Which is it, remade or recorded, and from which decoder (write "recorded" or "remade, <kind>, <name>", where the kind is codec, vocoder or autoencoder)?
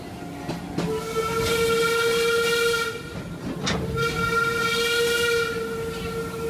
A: recorded